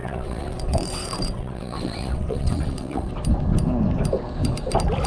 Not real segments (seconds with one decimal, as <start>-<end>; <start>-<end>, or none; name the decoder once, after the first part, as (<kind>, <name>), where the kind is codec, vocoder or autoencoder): 0.0-3.1 (vocoder, WaveNeXt)

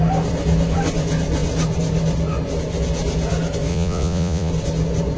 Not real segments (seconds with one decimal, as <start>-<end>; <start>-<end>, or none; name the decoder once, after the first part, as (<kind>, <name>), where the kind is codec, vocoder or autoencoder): 3.7-4.5 (vocoder, Vocos)

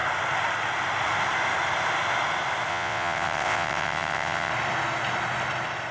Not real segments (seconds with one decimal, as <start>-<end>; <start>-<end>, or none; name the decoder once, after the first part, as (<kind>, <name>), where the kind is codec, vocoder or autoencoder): 2.7-4.5 (vocoder, WaveNeXt)

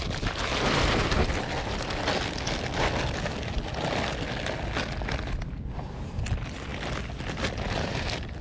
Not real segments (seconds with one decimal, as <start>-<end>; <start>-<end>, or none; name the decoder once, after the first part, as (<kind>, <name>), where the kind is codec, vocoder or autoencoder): none

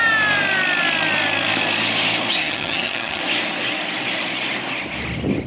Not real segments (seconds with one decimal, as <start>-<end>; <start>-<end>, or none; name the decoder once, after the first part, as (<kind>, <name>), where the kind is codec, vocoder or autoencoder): 2.4-3.2 (vocoder, HiFi-GAN)

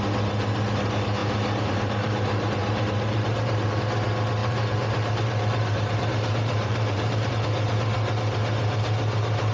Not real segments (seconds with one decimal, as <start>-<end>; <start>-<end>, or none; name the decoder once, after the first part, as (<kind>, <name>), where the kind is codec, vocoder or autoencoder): 1.2-3.8 (vocoder, BigVGAN v2); 4.4-7.3